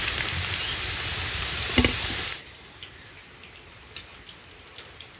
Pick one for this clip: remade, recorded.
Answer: recorded